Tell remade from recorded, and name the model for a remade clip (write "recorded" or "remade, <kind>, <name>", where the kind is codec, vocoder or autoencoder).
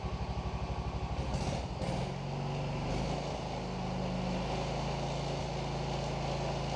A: recorded